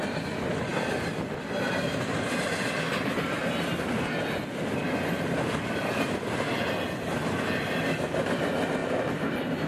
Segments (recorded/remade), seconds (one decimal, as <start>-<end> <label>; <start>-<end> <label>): 0.0-9.7 recorded